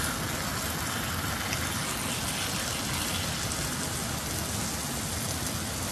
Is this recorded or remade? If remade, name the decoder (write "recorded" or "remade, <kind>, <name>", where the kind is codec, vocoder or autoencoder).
recorded